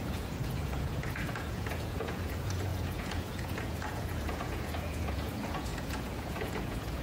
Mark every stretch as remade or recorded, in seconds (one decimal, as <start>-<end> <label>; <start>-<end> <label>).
0.0-7.0 remade